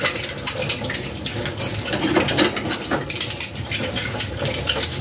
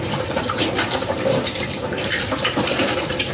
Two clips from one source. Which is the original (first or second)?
first